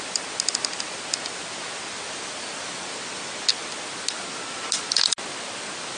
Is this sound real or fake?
real